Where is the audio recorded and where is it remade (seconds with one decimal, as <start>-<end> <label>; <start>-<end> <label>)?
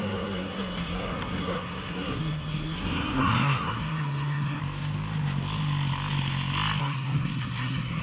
0.0-4.6 remade; 4.6-6.8 recorded; 6.8-8.0 remade